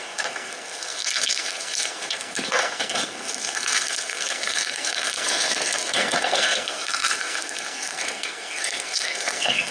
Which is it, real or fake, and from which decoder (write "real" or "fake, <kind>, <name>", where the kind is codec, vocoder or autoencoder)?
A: fake, codec, SNAC